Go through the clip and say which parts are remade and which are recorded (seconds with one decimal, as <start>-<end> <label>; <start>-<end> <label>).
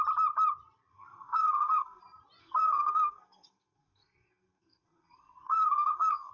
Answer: 0.0-0.9 recorded; 0.9-2.0 remade; 2.0-2.4 recorded; 2.4-6.3 remade